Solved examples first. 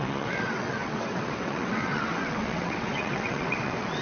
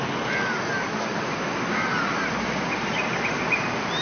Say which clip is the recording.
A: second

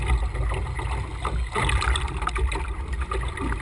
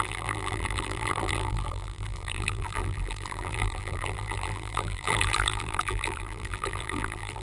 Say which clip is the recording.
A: first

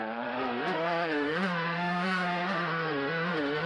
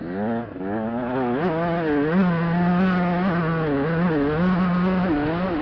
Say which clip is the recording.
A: second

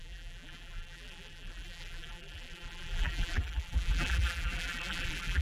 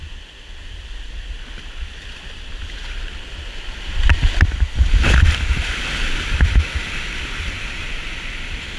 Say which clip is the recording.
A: second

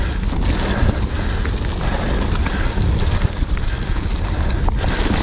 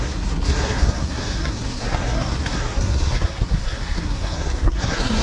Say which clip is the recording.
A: first